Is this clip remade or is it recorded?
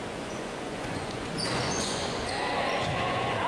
remade